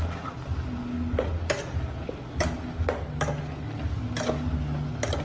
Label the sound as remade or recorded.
recorded